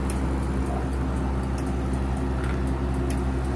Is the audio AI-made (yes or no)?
no